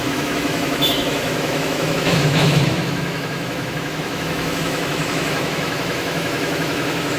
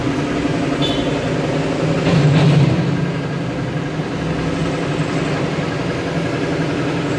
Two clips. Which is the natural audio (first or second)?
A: second